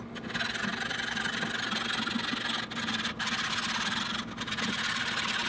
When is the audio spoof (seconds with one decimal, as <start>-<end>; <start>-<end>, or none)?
none